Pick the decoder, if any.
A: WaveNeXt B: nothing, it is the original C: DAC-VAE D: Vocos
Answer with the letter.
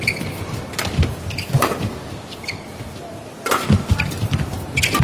B